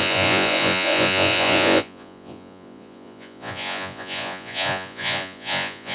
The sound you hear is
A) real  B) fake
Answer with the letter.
B